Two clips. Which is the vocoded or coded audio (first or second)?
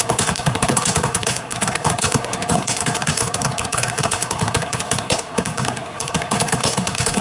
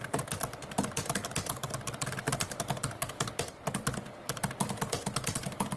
first